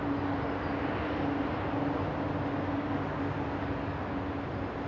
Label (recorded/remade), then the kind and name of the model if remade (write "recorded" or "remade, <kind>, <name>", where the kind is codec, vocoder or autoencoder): recorded